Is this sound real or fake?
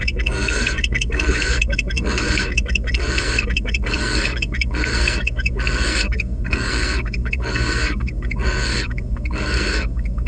fake